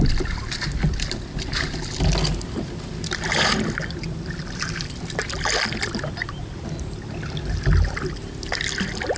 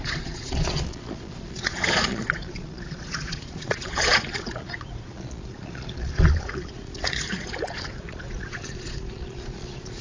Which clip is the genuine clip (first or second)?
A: first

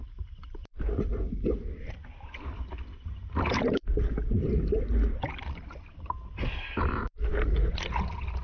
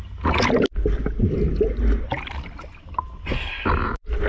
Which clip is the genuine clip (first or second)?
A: second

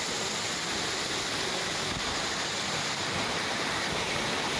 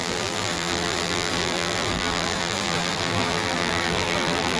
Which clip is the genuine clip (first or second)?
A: first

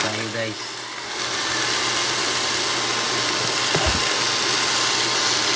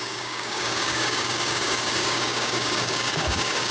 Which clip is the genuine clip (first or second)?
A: first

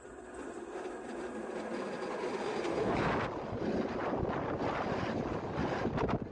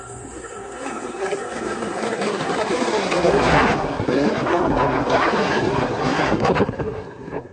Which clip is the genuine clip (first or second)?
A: first